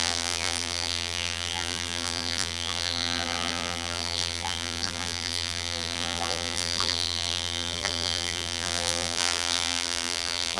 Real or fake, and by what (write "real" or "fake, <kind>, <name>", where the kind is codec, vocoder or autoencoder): fake, vocoder, BigVGAN v2